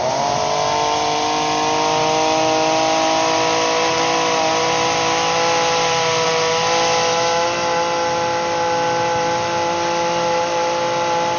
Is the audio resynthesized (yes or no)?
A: no